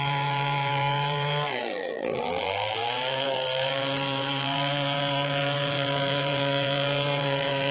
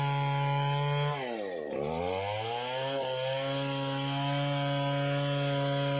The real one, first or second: second